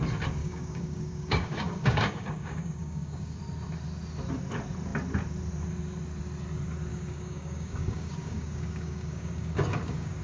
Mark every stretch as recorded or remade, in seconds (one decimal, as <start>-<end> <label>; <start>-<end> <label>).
0.0-0.4 recorded; 0.4-3.4 remade; 3.4-6.9 recorded; 6.9-10.2 remade